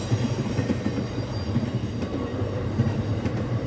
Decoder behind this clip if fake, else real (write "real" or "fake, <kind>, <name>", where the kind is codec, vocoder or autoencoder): fake, vocoder, BigVGAN v2